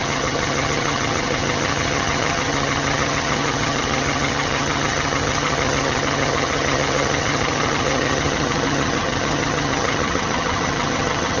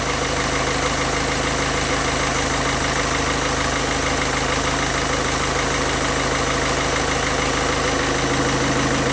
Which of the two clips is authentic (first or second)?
second